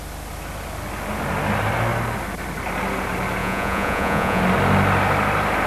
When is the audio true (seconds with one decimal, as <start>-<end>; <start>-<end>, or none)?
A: 0.0-3.4; 4.4-5.7